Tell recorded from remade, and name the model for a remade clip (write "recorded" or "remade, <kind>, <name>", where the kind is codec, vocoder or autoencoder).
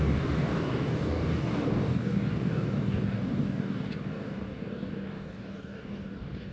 remade, codec, DAC